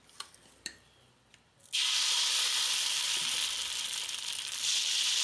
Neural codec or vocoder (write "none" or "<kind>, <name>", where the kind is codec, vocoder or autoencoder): vocoder, BigVGAN v2